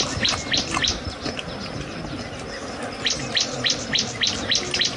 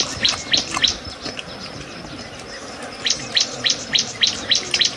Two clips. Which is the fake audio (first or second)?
second